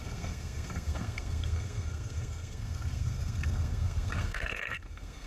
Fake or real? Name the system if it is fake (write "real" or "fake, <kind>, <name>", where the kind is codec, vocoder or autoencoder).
fake, codec, SNAC